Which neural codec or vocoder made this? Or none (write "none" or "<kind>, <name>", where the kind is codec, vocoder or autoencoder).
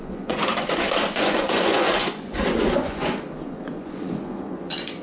vocoder, Vocos